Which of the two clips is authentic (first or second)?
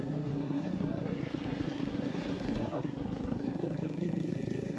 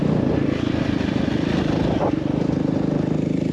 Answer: second